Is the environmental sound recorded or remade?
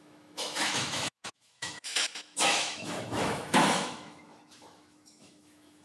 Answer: remade